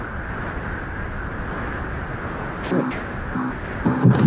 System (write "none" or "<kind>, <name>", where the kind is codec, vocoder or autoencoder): none